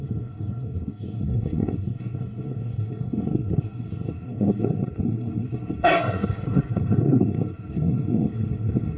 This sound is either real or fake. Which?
fake